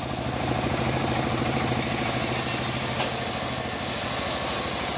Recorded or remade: recorded